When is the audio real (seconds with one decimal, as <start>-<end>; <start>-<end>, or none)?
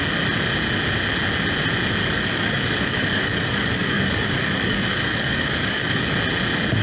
0.0-2.0; 6.1-6.8